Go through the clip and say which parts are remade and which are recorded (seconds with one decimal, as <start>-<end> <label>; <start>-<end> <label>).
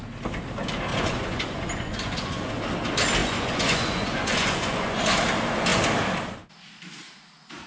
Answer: 0.0-0.9 recorded; 0.9-2.5 remade; 2.5-3.2 recorded; 3.2-5.0 remade; 5.0-7.7 recorded